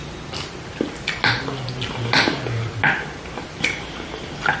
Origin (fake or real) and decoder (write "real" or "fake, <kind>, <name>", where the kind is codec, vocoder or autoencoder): real